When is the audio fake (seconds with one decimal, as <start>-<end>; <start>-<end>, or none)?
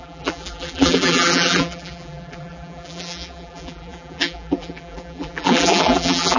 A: 0.0-6.4